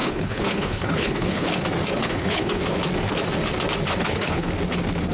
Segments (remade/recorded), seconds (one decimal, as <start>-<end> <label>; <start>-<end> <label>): 0.0-1.5 remade; 1.5-2.0 recorded; 2.0-2.6 remade; 2.6-3.9 recorded; 3.9-4.5 remade; 4.5-5.1 recorded